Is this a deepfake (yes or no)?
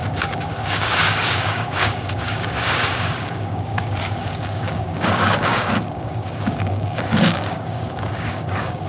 yes